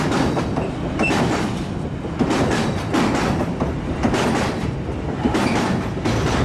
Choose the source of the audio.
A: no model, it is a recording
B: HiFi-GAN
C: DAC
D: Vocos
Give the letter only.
A